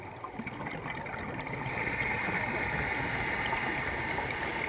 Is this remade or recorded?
recorded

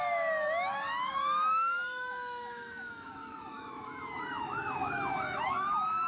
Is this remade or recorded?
remade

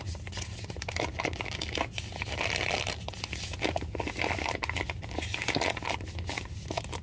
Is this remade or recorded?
recorded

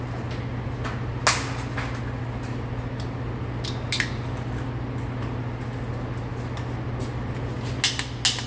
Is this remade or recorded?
recorded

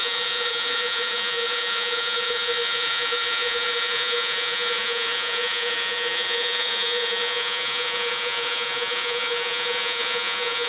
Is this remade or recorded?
remade